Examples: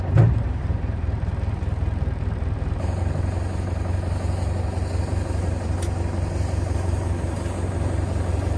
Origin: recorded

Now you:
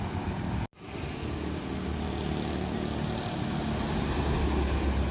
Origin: recorded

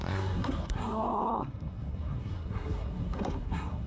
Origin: remade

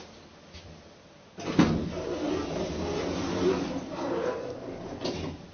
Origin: recorded